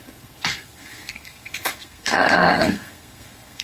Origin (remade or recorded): remade